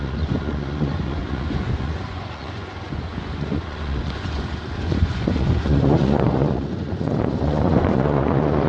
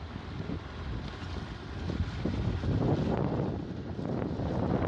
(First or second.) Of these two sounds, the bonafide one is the second